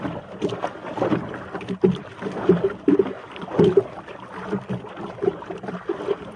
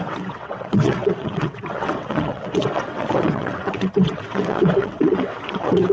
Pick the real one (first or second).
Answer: first